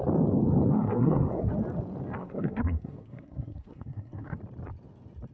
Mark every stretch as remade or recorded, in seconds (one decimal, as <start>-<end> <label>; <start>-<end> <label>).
0.0-0.7 recorded; 0.7-1.5 remade; 1.5-2.2 recorded; 2.2-4.4 remade; 4.4-5.3 recorded